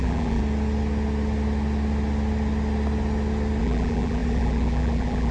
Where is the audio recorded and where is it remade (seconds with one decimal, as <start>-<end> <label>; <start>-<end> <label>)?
0.0-0.4 remade; 0.4-3.6 recorded; 3.6-5.3 remade